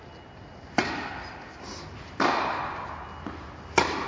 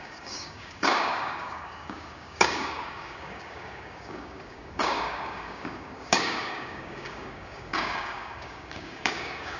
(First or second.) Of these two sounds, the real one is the first